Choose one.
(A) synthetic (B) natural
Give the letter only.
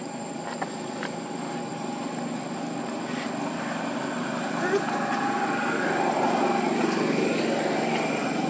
B